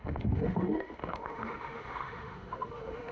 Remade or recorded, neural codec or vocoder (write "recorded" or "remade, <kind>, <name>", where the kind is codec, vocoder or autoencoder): remade, autoencoder, DAC-VAE